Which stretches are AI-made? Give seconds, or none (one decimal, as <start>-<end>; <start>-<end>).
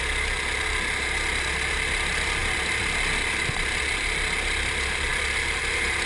none